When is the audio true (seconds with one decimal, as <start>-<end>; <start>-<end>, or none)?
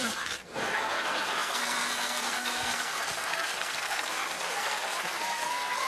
none